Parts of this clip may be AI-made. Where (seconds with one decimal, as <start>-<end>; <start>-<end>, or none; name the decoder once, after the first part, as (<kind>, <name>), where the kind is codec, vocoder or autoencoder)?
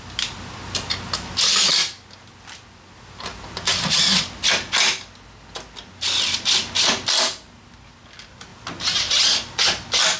none